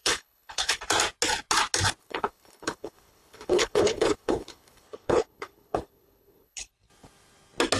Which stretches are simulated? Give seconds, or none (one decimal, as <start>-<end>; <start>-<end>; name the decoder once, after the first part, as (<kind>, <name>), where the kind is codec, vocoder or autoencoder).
0.0-0.8 (codec, HILCodec); 2.0-6.7